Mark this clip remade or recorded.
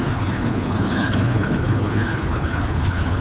remade